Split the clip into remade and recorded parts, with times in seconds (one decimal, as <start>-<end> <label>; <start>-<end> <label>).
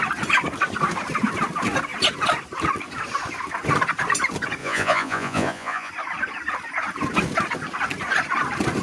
0.0-4.6 recorded; 4.6-5.9 remade; 5.9-8.8 recorded